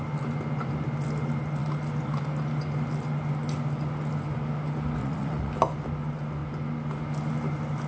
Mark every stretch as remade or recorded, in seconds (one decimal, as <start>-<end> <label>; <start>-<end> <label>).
0.0-5.0 recorded; 5.0-5.5 remade; 5.5-7.9 recorded